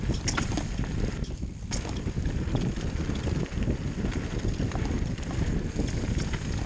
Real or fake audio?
real